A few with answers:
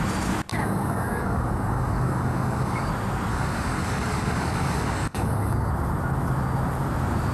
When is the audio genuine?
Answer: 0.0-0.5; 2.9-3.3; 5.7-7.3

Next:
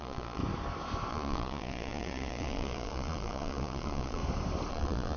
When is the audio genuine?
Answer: 0.4-1.1; 4.2-4.7

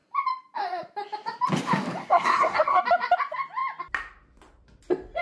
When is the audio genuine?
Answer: 0.0-2.0; 2.8-5.2

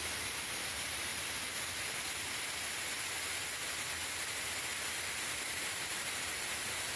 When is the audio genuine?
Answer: 1.1-5.3